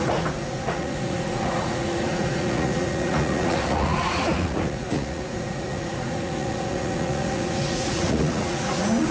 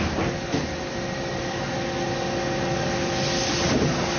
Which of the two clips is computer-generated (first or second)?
first